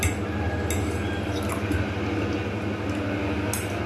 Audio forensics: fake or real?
real